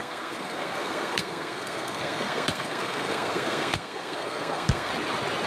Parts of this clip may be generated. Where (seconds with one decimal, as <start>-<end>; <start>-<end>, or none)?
0.0-4.9